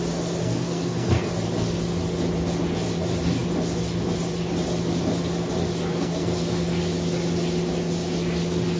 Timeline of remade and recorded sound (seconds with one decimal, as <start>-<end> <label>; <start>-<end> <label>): 0.0-0.4 recorded; 0.4-1.3 remade; 1.3-5.9 recorded; 5.9-6.8 remade; 6.8-8.8 recorded